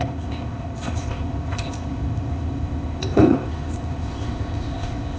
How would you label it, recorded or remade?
remade